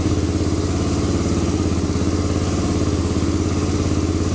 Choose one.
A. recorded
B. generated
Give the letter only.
A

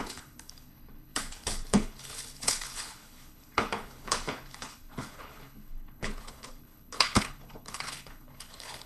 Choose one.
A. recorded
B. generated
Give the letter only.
B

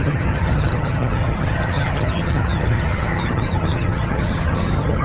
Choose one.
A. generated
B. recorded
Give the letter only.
A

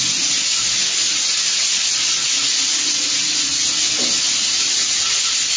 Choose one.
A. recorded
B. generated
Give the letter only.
A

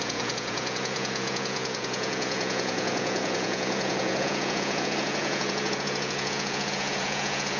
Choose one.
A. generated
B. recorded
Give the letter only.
A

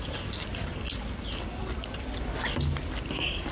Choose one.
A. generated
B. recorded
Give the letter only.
B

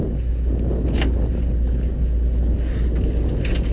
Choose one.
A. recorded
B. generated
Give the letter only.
A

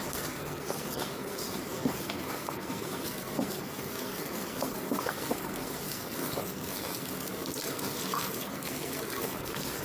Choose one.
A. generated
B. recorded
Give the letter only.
A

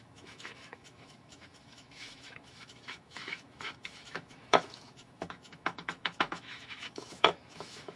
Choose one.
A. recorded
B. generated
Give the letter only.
B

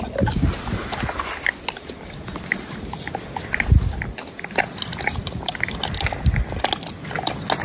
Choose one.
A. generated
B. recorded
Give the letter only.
B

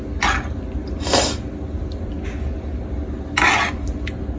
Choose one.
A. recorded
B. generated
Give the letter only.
A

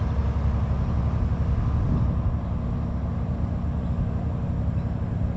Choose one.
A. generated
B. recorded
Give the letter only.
B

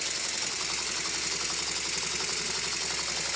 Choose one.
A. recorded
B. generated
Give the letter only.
A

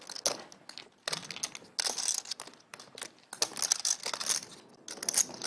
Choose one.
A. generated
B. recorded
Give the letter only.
B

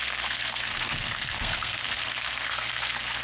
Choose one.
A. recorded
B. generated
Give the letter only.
B